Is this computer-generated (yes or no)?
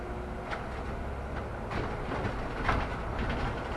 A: no